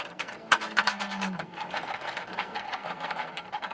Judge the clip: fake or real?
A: fake